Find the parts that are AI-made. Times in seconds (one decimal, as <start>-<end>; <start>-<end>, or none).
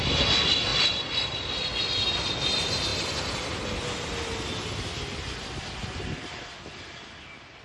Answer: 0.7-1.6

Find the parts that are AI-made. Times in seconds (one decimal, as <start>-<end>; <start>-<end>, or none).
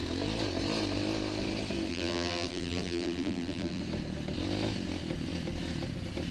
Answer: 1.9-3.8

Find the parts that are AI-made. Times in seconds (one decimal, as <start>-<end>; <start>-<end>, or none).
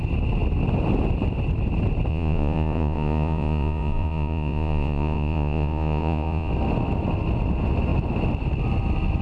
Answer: 2.1-6.5